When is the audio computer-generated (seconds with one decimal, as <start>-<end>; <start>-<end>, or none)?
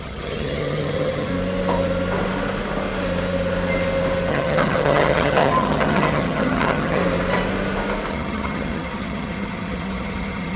0.0-1.3; 4.3-7.0; 8.1-10.6